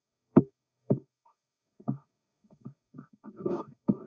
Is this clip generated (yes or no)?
yes